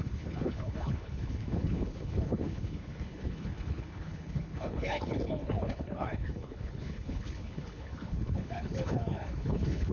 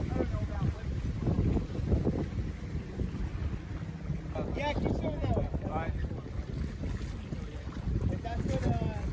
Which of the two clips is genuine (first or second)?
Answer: second